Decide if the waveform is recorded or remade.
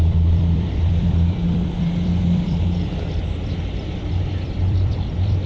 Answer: remade